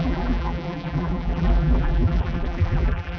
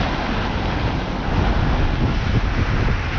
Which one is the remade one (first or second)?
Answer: first